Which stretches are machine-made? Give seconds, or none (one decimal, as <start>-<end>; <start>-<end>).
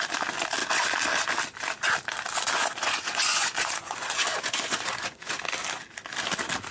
2.6-5.4